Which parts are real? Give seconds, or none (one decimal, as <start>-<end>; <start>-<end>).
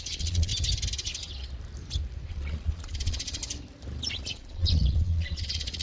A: 0.5-2.3; 3.4-4.1